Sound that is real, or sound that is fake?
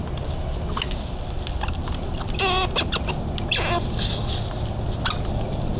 real